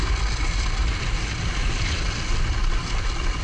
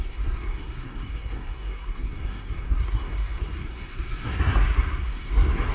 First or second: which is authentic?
first